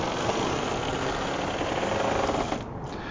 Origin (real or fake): real